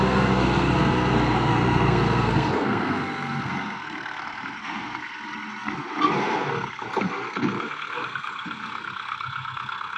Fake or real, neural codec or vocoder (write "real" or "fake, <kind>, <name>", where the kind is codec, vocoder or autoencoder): fake, codec, SNAC